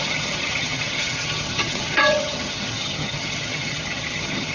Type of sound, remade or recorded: remade